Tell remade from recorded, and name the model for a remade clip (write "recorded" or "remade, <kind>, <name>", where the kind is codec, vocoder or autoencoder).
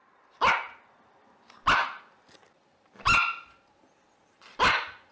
recorded